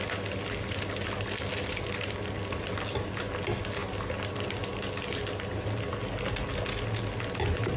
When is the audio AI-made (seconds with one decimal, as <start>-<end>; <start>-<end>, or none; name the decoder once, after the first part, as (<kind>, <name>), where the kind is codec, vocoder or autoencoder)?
none